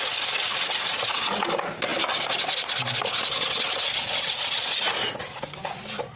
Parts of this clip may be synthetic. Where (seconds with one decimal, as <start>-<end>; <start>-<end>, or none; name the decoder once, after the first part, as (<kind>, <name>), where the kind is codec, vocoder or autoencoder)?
none